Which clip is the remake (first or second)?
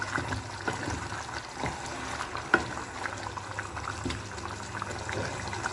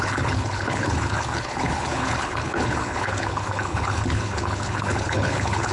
second